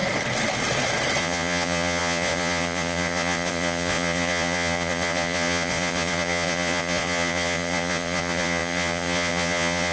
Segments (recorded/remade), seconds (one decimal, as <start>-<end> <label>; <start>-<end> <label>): 0.0-1.2 recorded; 1.2-9.9 remade